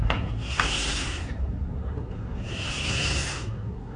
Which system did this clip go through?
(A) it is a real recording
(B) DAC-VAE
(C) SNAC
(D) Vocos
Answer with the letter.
C